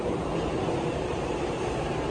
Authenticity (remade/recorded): recorded